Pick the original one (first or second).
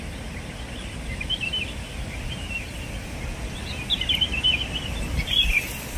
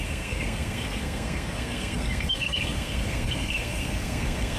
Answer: first